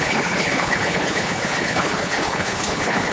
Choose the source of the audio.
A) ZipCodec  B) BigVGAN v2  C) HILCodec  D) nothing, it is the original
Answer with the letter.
C